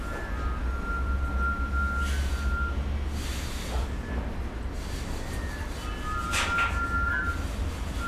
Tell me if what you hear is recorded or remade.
recorded